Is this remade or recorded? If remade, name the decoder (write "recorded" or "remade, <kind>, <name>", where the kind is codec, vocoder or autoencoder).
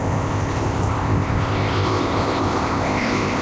remade, codec, ZipCodec